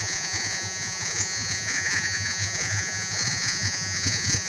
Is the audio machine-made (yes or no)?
yes